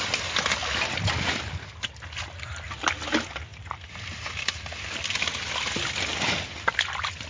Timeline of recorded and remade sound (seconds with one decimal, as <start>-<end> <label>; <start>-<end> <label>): 0.0-7.3 recorded